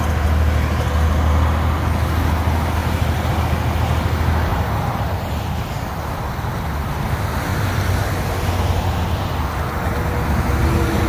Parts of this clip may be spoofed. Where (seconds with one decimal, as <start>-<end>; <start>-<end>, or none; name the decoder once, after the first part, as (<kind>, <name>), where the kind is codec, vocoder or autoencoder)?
2.8-3.3 (vocoder, BigVGAN v2); 4.5-6.2; 7.5-8.1